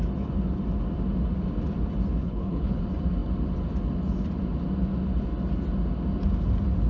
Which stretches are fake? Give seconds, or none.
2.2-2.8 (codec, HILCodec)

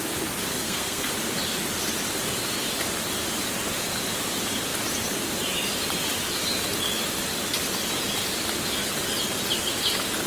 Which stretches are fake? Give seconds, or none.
0.5-1.1 (codec, SNAC)

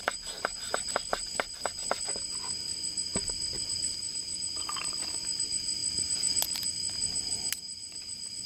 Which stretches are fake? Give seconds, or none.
none

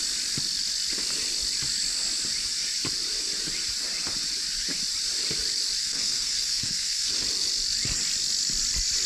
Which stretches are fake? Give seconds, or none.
5.8-7.1 (codec, SNAC)

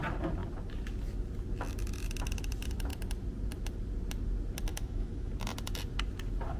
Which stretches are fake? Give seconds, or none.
4.7-5.3 (autoencoder, DAC-VAE)

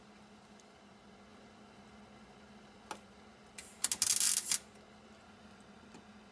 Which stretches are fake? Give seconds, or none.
none

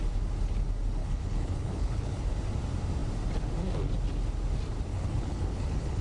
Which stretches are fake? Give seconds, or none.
1.0-2.3 (codec, HILCodec); 4.9-6.0